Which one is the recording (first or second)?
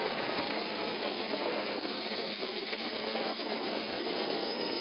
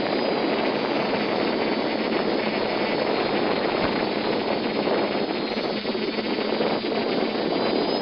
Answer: second